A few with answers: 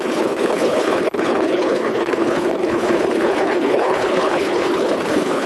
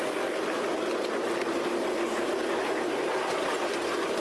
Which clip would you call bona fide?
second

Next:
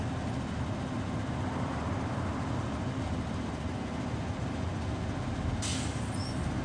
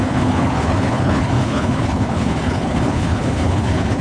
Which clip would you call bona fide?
first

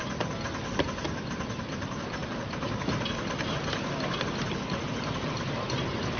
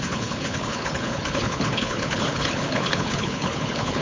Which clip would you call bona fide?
first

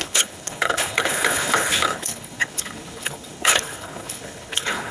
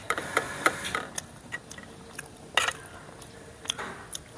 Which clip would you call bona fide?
second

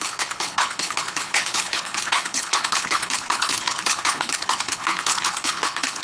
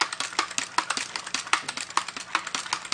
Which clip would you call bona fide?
second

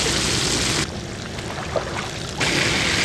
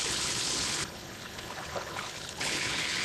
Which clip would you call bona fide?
first